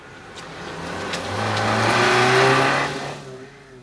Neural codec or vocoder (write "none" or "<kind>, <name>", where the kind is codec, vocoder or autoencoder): none